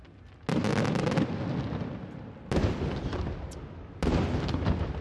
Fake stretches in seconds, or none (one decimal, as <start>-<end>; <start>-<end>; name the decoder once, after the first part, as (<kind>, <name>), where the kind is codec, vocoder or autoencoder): none